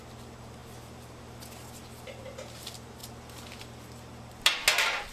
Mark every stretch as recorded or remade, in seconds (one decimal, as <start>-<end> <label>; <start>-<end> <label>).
0.0-5.1 recorded

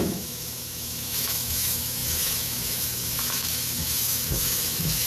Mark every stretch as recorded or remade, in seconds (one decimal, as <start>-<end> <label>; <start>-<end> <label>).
0.0-5.1 remade

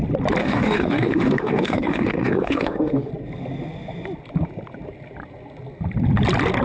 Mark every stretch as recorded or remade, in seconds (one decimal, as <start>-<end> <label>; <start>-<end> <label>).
0.0-0.4 recorded; 0.4-3.1 remade; 3.1-6.6 recorded

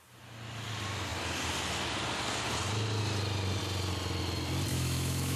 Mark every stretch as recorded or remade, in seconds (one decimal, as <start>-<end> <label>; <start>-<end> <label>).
0.0-4.7 recorded; 4.7-5.4 remade